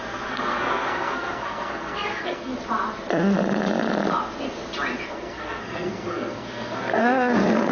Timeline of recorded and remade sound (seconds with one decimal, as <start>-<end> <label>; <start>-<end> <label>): 0.0-2.5 remade; 2.5-5.1 recorded; 5.1-7.7 remade